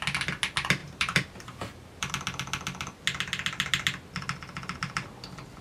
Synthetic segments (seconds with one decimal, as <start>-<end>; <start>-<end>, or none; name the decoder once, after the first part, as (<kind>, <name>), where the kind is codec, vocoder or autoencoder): 0.8-2.1 (vocoder, BigVGAN v2)